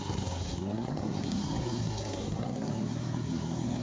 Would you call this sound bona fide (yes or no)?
no